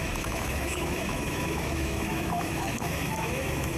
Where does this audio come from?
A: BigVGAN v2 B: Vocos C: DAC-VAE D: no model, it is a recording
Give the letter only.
C